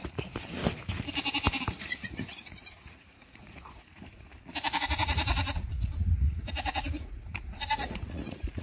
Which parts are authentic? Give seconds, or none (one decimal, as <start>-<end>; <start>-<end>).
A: 0.6-1.6; 4.3-4.8